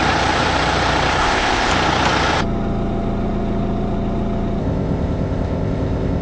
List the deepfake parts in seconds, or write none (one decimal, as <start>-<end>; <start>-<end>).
1.2-1.7; 4.6-6.2